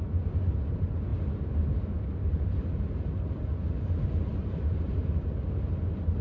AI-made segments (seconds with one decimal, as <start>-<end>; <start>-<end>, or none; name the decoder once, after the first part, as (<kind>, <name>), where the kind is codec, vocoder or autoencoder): 4.3-5.0 (vocoder, BigVGAN v2)